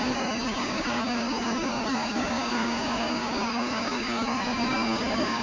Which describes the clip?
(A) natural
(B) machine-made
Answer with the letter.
B